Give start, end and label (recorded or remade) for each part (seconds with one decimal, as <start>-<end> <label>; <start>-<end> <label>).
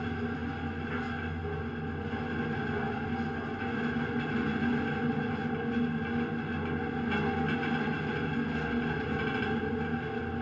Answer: 0.0-10.4 recorded